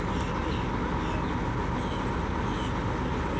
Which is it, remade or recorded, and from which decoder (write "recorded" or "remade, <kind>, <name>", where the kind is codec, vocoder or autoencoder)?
recorded